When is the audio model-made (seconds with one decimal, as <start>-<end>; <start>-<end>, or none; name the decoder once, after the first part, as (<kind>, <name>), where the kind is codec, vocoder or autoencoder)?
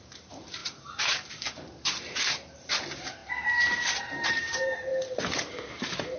0.0-3.2 (vocoder, BigVGAN v2); 4.0-4.9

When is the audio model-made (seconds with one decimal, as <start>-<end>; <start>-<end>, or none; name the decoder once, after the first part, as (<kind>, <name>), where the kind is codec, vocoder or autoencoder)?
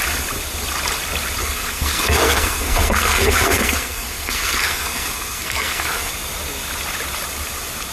1.4-6.1 (codec, SNAC)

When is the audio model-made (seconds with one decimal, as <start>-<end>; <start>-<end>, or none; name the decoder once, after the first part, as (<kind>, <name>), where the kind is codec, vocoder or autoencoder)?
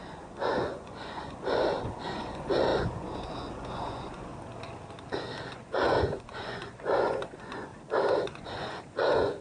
0.0-4.3 (vocoder, Vocos); 5.4-7.7; 8.2-9.4